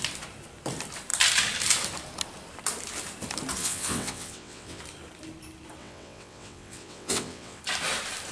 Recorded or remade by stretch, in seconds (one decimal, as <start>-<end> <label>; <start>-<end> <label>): 0.0-3.6 recorded; 3.6-4.8 remade; 4.8-5.8 recorded; 5.8-7.6 remade; 7.6-8.3 recorded